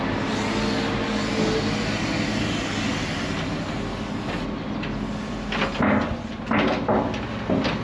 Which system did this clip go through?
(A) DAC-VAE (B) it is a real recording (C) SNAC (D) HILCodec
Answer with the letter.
B